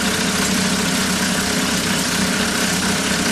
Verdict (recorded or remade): recorded